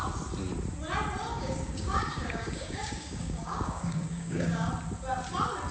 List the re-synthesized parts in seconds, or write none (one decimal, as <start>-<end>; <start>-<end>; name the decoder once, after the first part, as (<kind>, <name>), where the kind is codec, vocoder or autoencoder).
1.3-4.7 (codec, DAC)